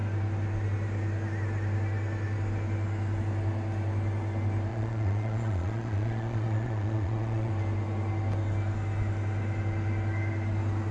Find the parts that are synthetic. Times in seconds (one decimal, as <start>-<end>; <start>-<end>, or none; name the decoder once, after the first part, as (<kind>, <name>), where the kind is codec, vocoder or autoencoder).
4.7-7.5 (vocoder, Vocos)